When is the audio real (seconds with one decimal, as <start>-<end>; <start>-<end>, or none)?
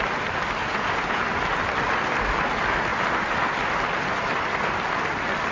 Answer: 0.0-0.6; 1.2-5.5